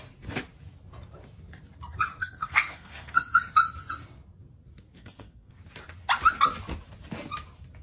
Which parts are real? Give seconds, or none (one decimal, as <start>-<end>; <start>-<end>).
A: 0.0-2.2; 3.4-5.0; 5.6-7.8